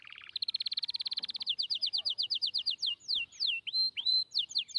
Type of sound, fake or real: real